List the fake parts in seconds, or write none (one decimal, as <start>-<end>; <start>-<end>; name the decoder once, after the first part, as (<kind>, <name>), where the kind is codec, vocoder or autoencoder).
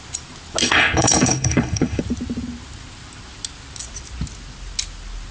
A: 0.6-2.0 (codec, HILCodec)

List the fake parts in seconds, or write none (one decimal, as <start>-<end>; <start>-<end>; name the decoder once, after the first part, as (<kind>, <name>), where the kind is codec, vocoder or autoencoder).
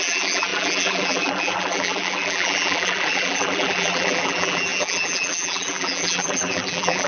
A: 0.0-7.1 (vocoder, BigVGAN v2)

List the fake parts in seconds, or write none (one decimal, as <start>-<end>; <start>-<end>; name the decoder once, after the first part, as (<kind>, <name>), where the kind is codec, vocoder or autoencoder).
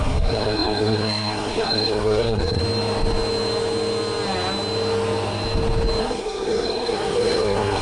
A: 0.0-2.6 (codec, SNAC); 6.0-7.8